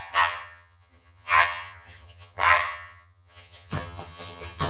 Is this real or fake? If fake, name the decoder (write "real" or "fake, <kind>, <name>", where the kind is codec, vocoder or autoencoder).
fake, vocoder, HiFi-GAN